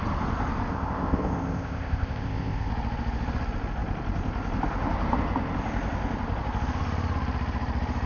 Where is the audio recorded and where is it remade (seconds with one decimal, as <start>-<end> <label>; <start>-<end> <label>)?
0.0-0.7 recorded; 0.7-2.7 remade; 2.7-8.1 recorded